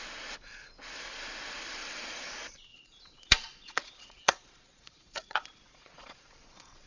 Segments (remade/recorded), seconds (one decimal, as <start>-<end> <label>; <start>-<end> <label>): 0.0-1.8 recorded; 1.8-2.3 remade; 2.3-2.7 recorded; 2.7-6.9 remade